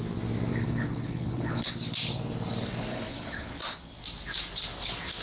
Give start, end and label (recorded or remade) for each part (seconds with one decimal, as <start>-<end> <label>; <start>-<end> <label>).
0.0-0.5 recorded; 0.5-1.7 remade; 1.7-2.9 recorded; 2.9-3.5 remade; 3.5-5.2 recorded